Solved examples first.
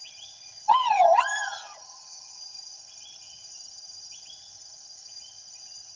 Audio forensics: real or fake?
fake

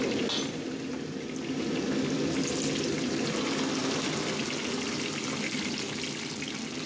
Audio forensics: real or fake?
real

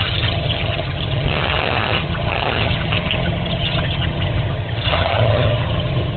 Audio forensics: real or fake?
fake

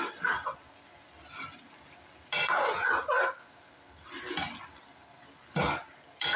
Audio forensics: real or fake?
real